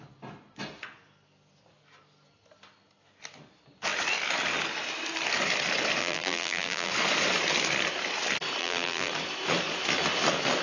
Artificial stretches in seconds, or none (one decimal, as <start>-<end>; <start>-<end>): 6.0-6.9; 8.6-9.1